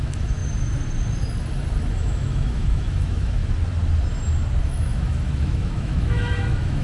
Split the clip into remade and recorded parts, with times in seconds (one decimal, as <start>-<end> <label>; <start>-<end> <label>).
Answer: 0.0-0.4 remade; 0.4-1.9 recorded; 1.9-3.4 remade; 3.4-4.6 recorded; 4.6-6.8 remade